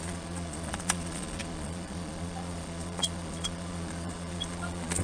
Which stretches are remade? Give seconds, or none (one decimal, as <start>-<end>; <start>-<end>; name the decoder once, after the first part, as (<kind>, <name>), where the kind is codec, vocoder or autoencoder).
0.0-5.0 (vocoder, Vocos)